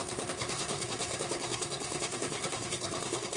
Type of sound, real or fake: fake